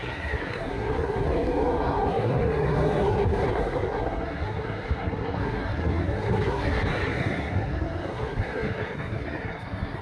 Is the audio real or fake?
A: fake